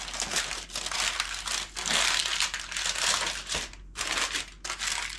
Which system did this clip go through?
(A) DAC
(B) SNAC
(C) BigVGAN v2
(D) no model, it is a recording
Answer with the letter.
D